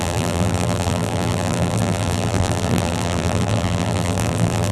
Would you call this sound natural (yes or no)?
no